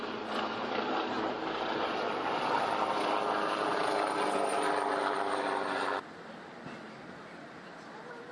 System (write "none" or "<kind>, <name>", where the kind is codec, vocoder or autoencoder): none